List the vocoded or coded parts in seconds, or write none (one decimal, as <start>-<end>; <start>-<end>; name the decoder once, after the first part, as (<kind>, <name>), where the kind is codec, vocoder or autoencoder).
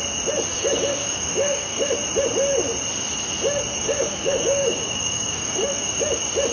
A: 0.5-1.9 (codec, DAC); 3.7-5.9